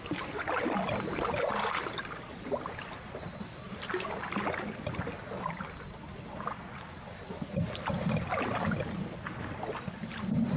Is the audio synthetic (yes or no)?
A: no